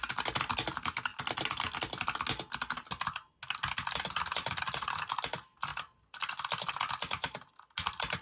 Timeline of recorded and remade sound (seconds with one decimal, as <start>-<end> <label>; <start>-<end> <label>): 0.0-8.2 recorded